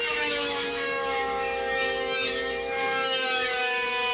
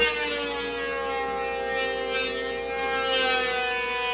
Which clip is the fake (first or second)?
first